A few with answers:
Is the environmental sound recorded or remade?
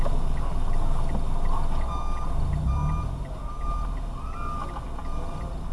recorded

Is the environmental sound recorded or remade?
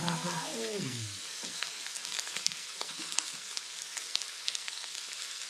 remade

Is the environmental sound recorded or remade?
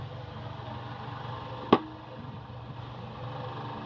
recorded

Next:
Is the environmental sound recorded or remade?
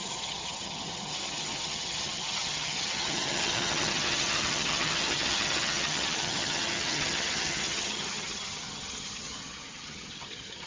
remade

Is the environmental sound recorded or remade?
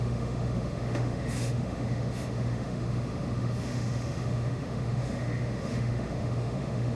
remade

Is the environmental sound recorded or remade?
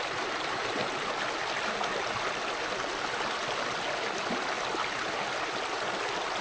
recorded